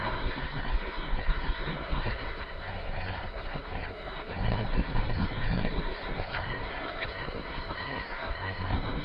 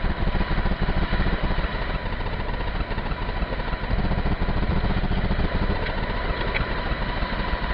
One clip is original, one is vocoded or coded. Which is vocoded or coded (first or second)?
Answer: first